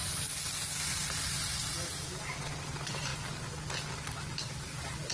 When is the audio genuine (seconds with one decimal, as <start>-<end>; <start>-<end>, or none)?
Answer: 0.0-1.8; 2.4-5.1